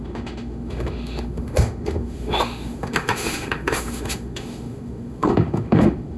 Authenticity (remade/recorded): remade